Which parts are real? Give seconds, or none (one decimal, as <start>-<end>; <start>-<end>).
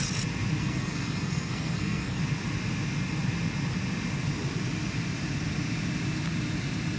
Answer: 0.0-0.6; 2.2-7.0